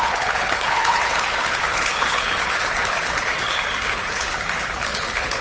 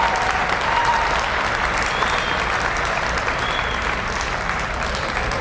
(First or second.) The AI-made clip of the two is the first